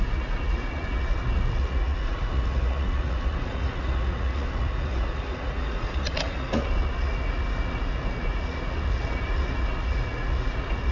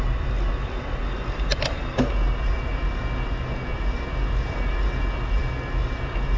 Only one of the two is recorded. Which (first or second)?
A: second